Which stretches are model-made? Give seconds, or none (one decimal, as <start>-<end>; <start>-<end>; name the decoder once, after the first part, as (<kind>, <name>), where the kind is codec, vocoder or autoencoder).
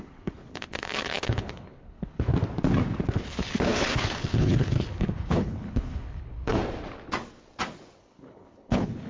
0.0-2.3 (codec, HILCodec); 3.1-6.6; 8.0-9.1